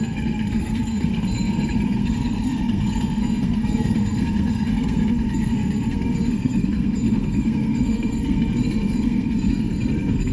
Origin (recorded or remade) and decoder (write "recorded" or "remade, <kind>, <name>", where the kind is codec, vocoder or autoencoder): remade, codec, SNAC